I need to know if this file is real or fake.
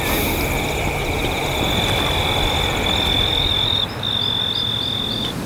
real